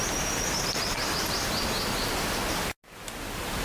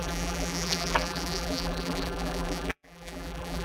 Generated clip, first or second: second